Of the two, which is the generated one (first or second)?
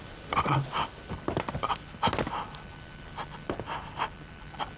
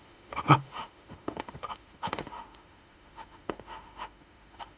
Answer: second